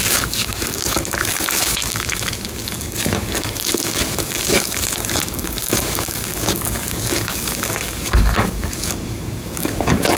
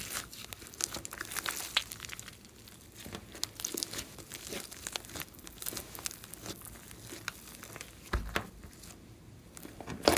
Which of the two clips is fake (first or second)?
first